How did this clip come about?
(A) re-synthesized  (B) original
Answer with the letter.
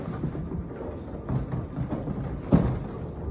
B